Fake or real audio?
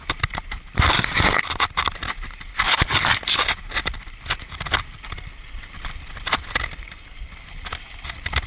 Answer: real